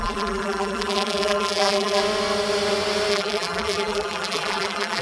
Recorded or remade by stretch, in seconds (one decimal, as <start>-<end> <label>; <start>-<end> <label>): 0.0-2.0 remade; 2.0-3.1 recorded; 3.1-5.0 remade